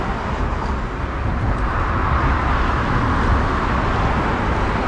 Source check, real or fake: real